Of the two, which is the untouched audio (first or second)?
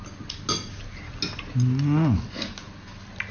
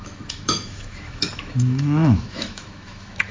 first